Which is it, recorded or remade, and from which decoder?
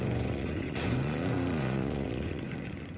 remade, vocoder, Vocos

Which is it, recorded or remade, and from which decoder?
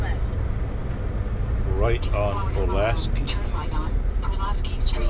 recorded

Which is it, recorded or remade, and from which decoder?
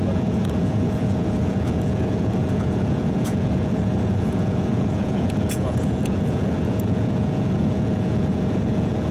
remade, vocoder, Vocos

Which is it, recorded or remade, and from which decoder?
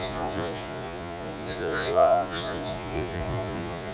remade, vocoder, Vocos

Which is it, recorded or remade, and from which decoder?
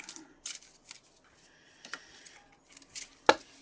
recorded